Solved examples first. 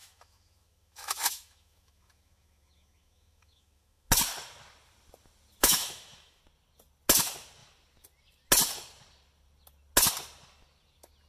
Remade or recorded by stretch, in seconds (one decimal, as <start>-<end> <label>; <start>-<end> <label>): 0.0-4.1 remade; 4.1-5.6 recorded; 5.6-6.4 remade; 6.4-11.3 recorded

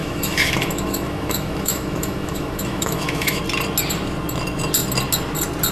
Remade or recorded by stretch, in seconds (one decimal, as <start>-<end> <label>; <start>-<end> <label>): 0.0-3.4 remade; 3.4-5.7 recorded

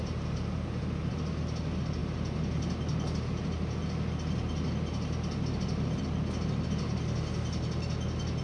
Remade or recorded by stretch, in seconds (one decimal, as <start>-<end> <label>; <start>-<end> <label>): 0.0-8.4 recorded